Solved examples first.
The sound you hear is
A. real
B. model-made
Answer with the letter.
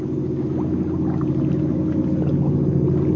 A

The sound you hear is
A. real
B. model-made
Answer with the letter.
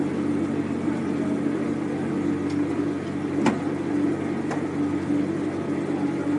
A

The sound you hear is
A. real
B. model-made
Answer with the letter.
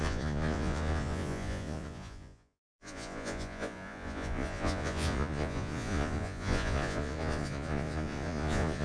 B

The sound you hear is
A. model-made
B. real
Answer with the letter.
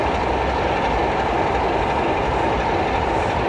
B